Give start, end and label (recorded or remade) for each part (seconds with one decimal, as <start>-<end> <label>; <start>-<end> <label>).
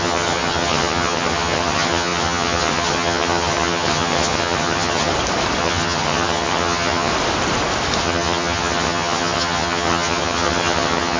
0.0-5.1 remade; 5.1-5.6 recorded; 5.6-7.1 remade; 7.1-8.0 recorded; 8.0-11.2 remade